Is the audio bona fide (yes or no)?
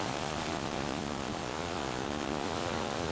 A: no